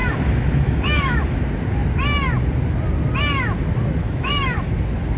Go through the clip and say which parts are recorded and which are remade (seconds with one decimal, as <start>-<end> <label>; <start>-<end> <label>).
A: 0.0-1.4 remade; 1.4-4.0 recorded; 4.0-4.7 remade; 4.7-5.2 recorded